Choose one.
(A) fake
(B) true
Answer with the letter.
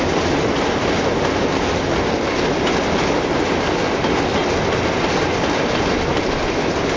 B